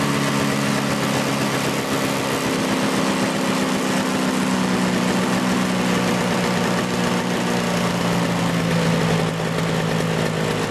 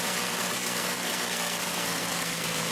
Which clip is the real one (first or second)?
first